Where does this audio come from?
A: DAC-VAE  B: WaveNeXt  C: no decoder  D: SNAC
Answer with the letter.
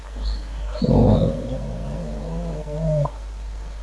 D